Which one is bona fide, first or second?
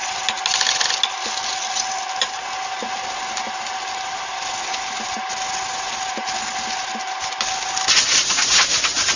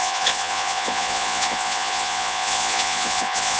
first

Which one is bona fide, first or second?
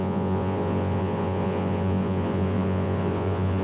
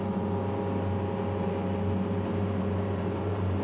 second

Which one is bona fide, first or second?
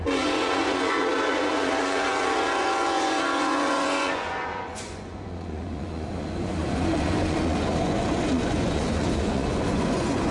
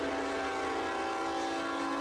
second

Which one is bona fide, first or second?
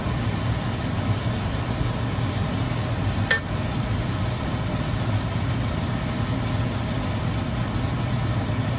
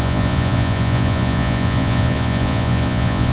first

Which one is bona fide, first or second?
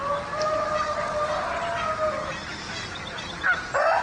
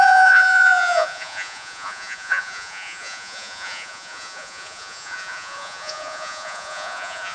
first